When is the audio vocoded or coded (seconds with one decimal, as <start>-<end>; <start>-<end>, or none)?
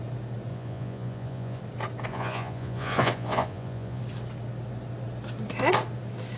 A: 0.5-1.6; 2.1-4.0